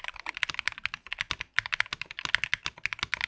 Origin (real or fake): real